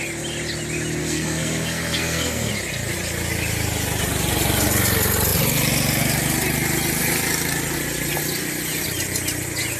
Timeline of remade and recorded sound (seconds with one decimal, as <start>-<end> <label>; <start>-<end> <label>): 0.0-1.0 recorded; 1.0-2.5 remade; 2.5-9.8 recorded